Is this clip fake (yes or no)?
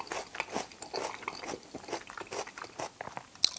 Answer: no